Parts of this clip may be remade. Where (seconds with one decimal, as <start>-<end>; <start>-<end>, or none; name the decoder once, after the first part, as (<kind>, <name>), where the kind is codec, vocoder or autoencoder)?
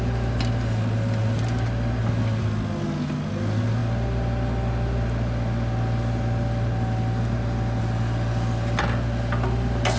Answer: none